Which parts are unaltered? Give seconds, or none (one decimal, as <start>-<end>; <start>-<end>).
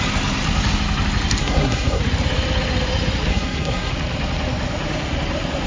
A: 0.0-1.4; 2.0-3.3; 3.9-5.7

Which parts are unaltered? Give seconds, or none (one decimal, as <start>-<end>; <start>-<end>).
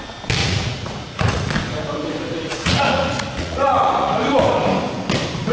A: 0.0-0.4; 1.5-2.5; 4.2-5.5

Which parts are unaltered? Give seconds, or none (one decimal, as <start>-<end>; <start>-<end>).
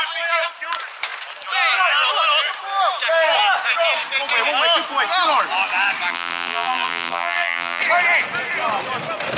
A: 0.0-6.1; 7.8-9.4